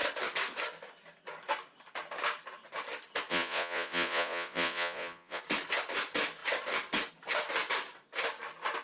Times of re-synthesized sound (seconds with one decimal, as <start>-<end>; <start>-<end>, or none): 3.3-5.4